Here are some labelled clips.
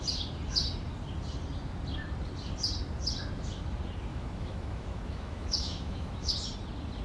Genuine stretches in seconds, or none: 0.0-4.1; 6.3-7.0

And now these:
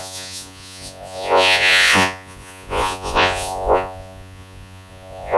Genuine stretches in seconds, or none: none

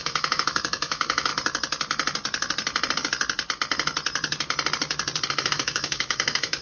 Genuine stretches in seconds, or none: 1.3-5.3